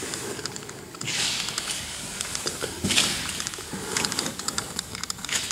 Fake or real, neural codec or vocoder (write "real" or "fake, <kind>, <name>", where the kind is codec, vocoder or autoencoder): fake, codec, DAC